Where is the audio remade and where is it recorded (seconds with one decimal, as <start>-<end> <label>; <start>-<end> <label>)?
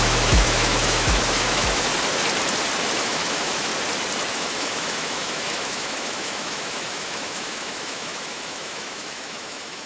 0.0-1.9 remade; 1.9-2.9 recorded; 2.9-3.7 remade; 3.7-4.3 recorded; 4.3-9.9 remade